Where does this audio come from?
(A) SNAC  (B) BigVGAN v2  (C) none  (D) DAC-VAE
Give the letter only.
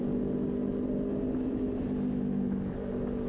C